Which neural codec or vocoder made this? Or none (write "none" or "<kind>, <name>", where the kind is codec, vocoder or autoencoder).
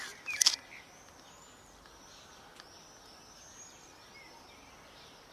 none